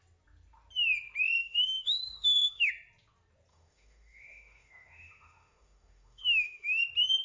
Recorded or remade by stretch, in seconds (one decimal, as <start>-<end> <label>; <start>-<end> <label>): 0.0-1.4 recorded; 1.4-2.7 remade; 2.7-3.5 recorded; 3.5-6.8 remade; 6.8-7.2 recorded